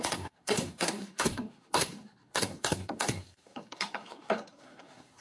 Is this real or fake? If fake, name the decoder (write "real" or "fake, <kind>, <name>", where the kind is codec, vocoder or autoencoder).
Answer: fake, codec, SNAC